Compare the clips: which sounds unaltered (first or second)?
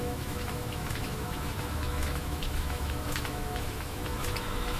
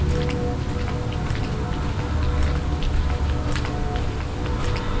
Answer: second